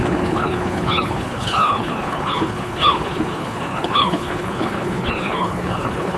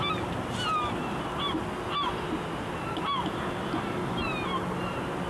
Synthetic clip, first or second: first